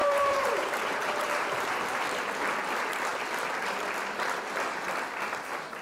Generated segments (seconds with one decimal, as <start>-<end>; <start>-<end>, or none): 0.0-1.8